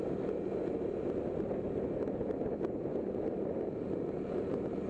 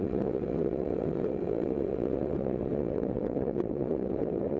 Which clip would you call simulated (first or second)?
second